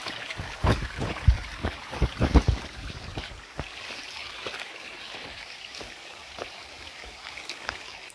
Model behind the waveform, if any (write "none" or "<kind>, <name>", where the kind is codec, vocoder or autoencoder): codec, DAC